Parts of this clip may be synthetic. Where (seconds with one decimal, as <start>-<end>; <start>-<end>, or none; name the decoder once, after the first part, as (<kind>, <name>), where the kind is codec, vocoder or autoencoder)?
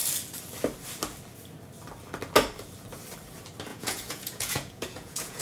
3.7-5.4 (vocoder, Vocos)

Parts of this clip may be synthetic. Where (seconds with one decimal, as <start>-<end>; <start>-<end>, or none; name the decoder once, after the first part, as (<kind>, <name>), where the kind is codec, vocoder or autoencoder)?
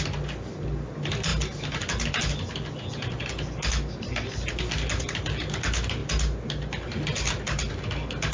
none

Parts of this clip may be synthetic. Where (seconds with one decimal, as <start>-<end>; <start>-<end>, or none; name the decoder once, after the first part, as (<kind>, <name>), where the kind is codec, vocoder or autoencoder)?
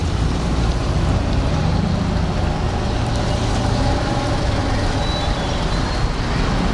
0.0-1.9 (vocoder, BigVGAN v2)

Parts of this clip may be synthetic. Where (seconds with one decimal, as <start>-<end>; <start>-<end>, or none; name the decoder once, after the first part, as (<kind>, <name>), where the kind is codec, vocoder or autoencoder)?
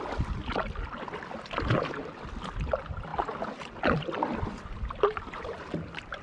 3.1-4.4 (vocoder, BigVGAN v2)